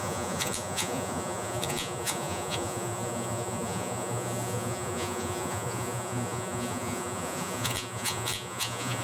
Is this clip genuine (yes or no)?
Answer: no